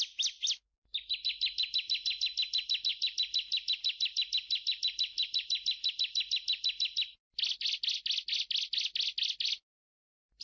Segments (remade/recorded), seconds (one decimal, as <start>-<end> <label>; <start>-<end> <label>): 0.0-10.4 recorded